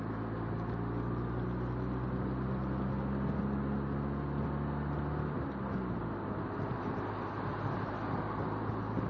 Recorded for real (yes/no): yes